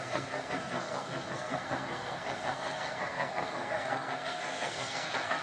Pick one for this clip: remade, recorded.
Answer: remade